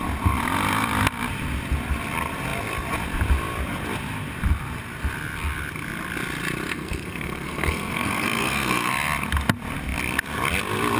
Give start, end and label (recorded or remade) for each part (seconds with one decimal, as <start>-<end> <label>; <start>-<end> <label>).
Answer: 0.0-6.7 recorded; 6.7-8.9 remade; 8.9-11.0 recorded